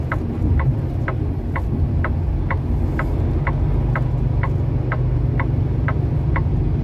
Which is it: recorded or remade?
recorded